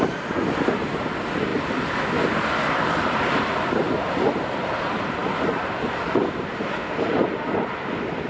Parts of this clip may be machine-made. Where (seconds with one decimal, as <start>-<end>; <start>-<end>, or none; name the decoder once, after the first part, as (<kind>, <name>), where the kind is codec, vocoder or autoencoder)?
none